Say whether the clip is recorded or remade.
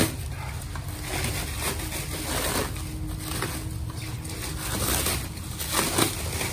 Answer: recorded